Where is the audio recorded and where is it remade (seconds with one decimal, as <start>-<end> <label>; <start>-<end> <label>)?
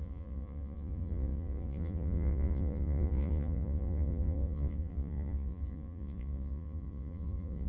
0.0-7.7 remade